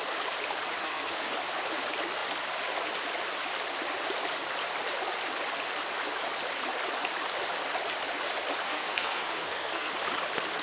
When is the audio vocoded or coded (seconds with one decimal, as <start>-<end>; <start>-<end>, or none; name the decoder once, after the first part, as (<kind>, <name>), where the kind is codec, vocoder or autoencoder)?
0.8-1.3 (codec, SNAC); 8.6-9.9